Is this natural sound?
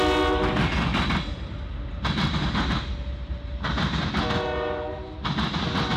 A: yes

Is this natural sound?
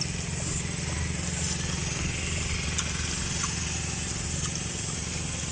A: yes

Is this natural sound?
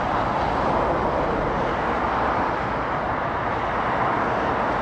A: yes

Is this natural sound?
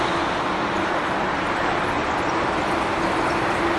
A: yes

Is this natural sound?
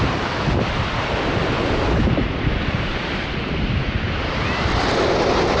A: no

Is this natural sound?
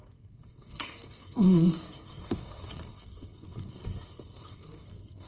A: no